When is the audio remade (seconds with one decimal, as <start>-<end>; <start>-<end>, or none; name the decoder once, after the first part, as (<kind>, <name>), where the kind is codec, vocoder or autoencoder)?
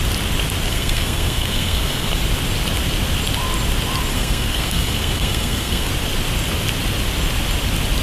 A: 0.7-2.2 (codec, SNAC); 4.1-5.9